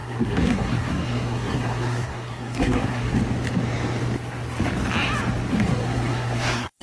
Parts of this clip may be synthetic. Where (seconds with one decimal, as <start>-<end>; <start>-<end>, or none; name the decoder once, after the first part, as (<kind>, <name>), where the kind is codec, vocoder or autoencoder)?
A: 0.0-3.2 (codec, SNAC); 5.5-6.8